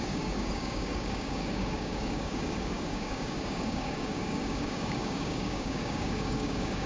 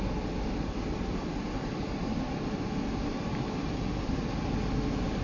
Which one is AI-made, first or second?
first